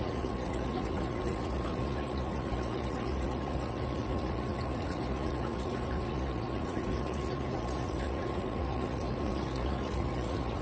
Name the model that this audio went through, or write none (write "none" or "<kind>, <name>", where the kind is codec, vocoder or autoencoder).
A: vocoder, Vocos